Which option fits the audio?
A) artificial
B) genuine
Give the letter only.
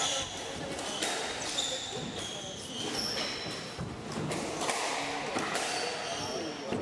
B